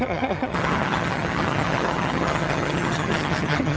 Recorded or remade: remade